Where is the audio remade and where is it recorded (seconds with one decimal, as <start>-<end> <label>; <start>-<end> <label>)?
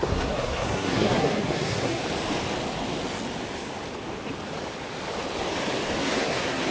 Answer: 0.0-2.0 remade; 2.0-6.0 recorded; 6.0-6.7 remade